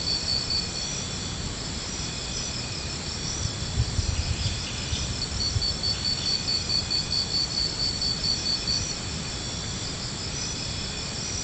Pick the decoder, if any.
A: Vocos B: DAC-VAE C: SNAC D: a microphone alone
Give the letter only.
D